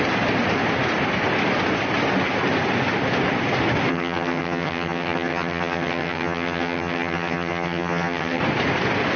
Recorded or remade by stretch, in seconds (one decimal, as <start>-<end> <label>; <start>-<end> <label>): 0.0-3.9 recorded; 3.9-8.4 remade; 8.4-9.2 recorded